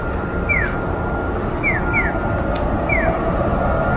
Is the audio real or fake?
real